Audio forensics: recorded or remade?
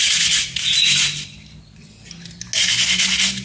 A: recorded